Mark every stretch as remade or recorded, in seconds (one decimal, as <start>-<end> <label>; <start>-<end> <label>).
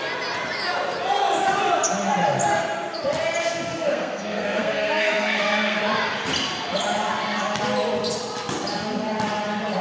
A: 0.0-3.7 recorded; 3.7-5.8 remade; 5.8-9.8 recorded